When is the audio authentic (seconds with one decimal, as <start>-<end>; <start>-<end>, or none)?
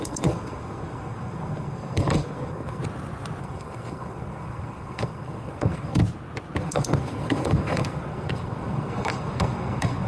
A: 2.8-3.4; 6.0-6.6